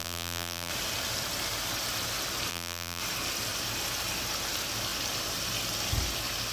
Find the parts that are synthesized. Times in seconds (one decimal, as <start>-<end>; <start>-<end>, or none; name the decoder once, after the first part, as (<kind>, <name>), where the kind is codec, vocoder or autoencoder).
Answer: 0.0-0.7 (vocoder, BigVGAN v2); 2.5-3.0